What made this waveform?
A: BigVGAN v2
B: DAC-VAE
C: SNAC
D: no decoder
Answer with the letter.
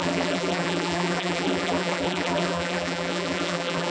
A